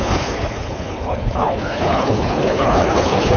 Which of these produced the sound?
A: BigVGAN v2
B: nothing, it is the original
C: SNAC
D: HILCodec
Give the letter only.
D